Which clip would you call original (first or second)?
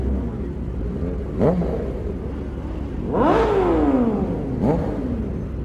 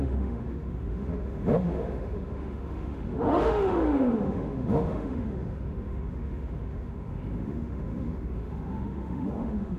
first